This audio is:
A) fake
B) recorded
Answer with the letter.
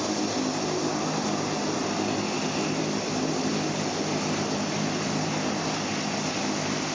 B